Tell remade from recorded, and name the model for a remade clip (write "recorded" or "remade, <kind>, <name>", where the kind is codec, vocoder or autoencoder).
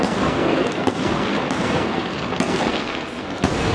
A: remade, codec, SNAC